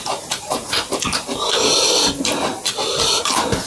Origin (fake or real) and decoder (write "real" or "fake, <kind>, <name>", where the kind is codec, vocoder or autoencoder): real